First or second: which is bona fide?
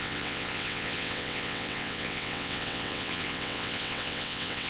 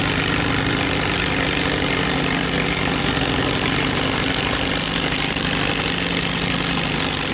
second